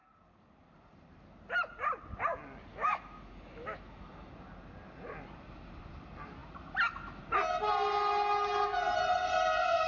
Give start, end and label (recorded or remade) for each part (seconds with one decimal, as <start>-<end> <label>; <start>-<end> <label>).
0.0-2.7 recorded; 2.7-4.3 remade; 4.3-9.9 recorded

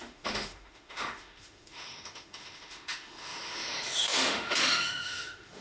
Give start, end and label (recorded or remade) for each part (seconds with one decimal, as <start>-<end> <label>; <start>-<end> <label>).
0.0-5.6 remade

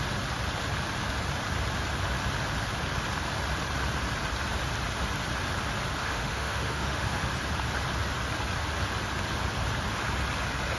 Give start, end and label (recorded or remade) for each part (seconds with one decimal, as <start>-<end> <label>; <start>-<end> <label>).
0.0-6.0 recorded; 6.0-7.3 remade; 7.3-10.8 recorded